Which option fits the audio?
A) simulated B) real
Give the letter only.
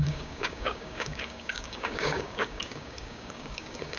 A